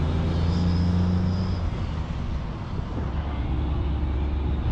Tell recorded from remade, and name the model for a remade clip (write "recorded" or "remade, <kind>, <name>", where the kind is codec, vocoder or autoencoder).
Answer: recorded